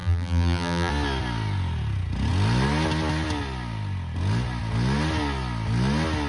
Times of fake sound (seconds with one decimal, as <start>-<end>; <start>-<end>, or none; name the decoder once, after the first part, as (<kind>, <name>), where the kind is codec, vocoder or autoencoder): 0.0-0.9 (vocoder, BigVGAN v2)